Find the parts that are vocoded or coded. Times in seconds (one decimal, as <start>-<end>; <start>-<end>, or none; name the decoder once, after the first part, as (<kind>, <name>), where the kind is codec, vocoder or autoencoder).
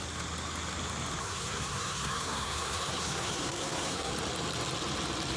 1.2-4.1 (codec, SNAC)